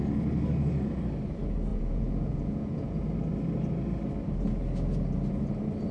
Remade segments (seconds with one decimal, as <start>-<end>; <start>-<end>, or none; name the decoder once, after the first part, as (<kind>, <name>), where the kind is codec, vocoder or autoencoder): 1.7-3.0 (vocoder, Vocos)